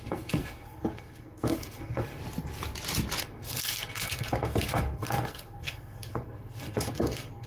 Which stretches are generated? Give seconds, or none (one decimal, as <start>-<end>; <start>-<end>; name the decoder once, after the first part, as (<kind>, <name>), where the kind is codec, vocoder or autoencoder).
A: 0.0-2.2 (codec, SNAC); 3.2-7.5